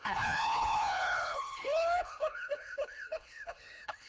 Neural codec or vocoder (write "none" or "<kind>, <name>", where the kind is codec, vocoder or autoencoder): codec, HILCodec